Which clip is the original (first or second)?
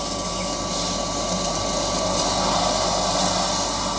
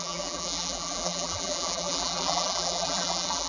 first